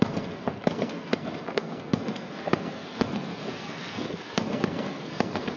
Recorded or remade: remade